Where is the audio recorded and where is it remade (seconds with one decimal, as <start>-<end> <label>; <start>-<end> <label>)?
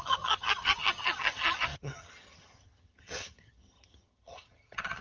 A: 0.0-5.0 remade